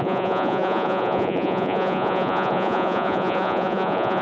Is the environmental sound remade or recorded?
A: remade